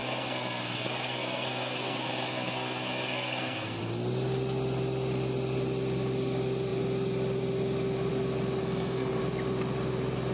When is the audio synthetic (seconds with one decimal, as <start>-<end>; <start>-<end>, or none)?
0.0-3.8; 8.6-9.2